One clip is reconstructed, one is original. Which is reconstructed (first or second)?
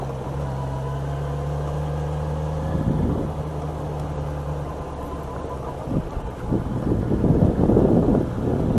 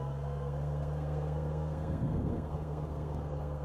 second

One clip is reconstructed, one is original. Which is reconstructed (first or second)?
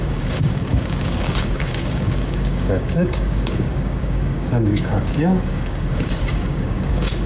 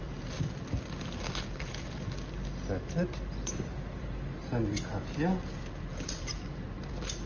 first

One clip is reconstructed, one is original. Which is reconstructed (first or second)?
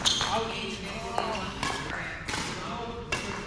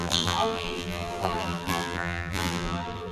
second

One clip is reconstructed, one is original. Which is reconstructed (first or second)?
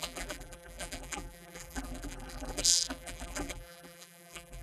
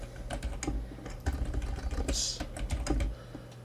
first